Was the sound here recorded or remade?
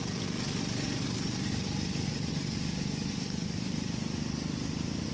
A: remade